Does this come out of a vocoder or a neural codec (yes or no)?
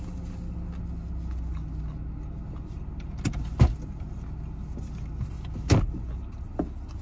no